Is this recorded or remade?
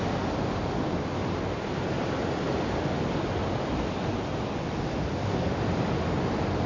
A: recorded